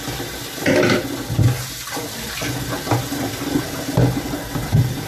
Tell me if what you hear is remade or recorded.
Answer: recorded